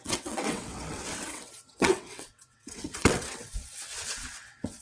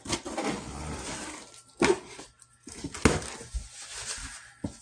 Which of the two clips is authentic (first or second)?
second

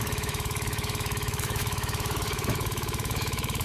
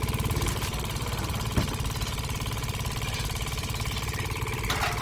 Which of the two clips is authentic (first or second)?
second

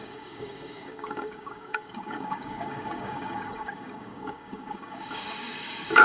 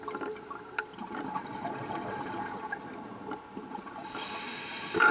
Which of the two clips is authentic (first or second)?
second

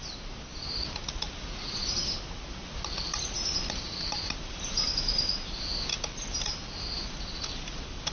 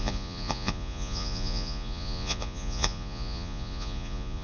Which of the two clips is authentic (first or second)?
first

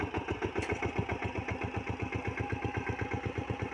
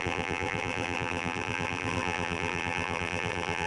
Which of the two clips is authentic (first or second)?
first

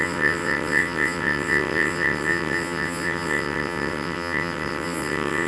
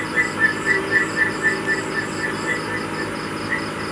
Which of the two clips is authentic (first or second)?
second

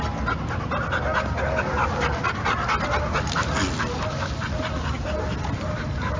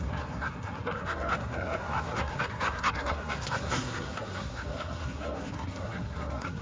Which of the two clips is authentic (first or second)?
first